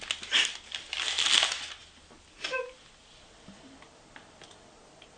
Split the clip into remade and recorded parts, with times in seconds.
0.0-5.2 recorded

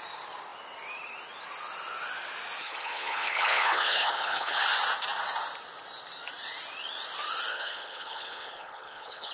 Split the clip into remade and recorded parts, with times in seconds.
0.0-2.6 recorded; 2.6-4.6 remade; 4.6-7.5 recorded; 7.5-9.3 remade

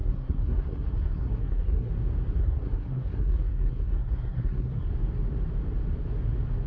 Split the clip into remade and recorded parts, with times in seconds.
0.0-1.9 remade; 1.9-2.4 recorded; 2.4-4.9 remade; 4.9-6.7 recorded